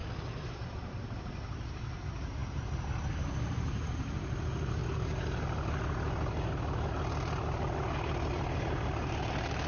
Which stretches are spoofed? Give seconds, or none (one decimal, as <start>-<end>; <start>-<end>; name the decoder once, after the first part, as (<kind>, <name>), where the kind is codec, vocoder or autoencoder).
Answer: 0.6-4.8 (vocoder, BigVGAN v2); 8.3-9.7